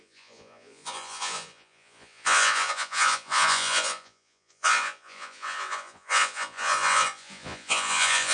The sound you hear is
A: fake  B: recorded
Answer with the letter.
A